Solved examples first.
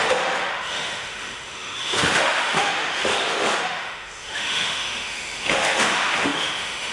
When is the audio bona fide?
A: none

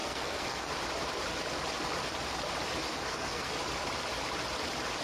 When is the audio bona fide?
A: 0.7-2.9; 3.5-5.0

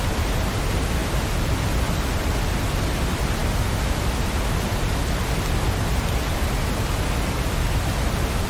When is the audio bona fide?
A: 0.0-1.0; 1.5-8.5

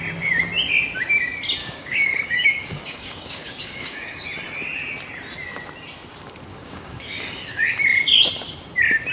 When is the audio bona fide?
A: 0.0-1.6; 4.3-6.5; 7.6-9.1

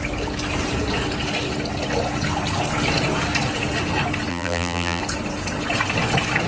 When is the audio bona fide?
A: 0.0-4.3; 5.0-6.5

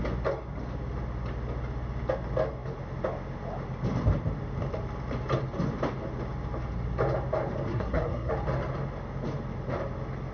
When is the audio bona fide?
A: 0.0-7.7; 8.3-10.3

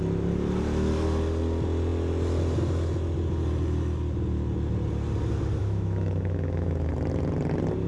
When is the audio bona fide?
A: 0.0-5.6; 6.9-7.9